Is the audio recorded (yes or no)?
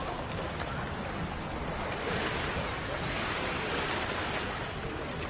yes